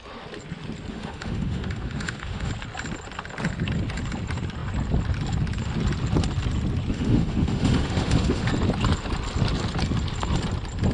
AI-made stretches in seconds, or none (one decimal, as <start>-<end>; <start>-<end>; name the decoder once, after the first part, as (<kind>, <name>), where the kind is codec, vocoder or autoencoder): 0.9-2.5 (autoencoder, DAC-VAE); 6.9-8.5